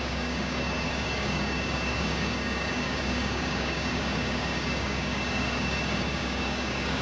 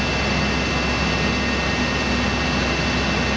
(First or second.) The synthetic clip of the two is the first